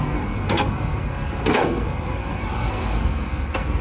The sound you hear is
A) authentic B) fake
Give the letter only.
B